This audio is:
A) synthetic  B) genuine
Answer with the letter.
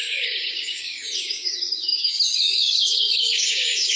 A